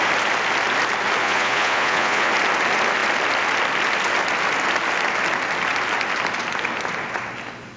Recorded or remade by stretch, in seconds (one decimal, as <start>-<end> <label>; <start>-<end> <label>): 0.0-1.2 recorded; 1.2-2.3 remade; 2.3-7.8 recorded